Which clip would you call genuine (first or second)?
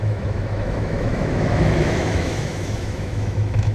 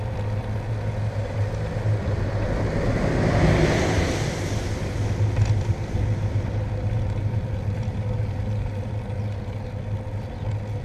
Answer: second